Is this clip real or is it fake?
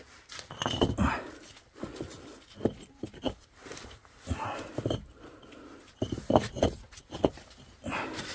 real